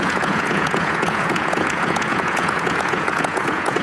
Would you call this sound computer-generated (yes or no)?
yes